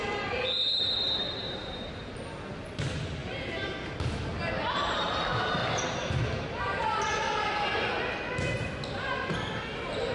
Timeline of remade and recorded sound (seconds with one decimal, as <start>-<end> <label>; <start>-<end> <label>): 0.0-10.1 recorded

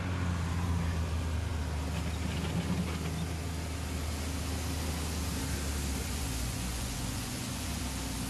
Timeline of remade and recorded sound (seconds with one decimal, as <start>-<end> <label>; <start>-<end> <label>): 0.0-6.0 recorded; 6.0-7.8 remade; 7.8-8.3 recorded

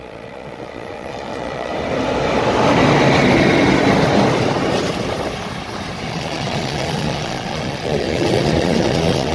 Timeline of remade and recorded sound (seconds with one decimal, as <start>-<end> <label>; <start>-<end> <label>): 0.0-1.7 remade; 1.7-6.1 recorded; 6.1-9.3 remade